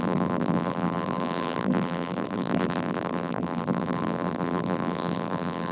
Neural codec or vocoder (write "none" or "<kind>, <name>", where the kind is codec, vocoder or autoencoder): vocoder, BigVGAN v2